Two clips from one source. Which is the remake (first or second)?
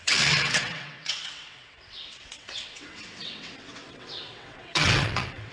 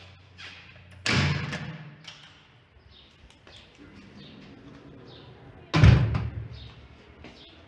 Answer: first